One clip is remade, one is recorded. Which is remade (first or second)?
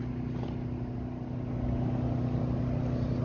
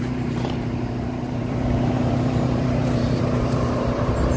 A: second